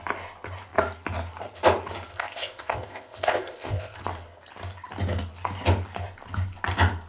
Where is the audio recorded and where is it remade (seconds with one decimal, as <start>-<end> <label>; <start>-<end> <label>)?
0.0-2.1 recorded; 2.1-4.0 remade; 4.0-7.1 recorded